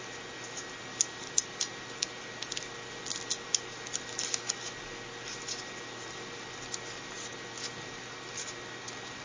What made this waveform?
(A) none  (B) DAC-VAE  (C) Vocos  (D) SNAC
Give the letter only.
A